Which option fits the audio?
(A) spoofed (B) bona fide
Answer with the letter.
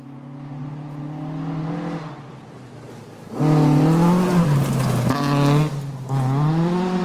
B